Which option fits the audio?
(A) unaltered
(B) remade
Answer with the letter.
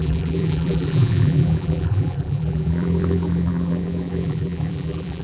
B